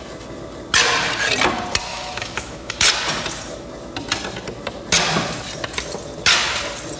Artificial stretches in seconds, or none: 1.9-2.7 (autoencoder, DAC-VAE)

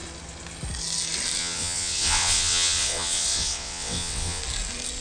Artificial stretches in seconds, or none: 1.4-4.4 (vocoder, WaveNeXt)

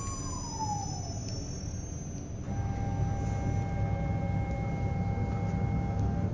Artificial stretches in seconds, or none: none

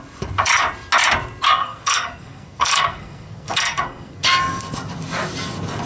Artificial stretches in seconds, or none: 1.6-4.6 (codec, SNAC)

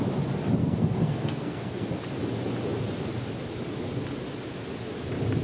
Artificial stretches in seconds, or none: 0.6-2.0 (codec, SNAC)

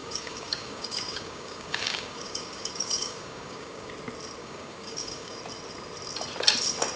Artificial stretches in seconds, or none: 0.0-3.9 (codec, DAC); 4.4-5.4

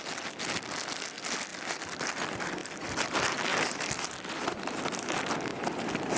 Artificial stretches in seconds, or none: 2.6-3.1 (vocoder, BigVGAN v2); 3.5-4.8

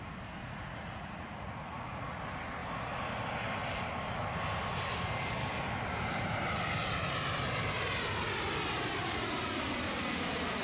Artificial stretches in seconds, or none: 0.4-2.2 (vocoder, Vocos); 9.0-9.6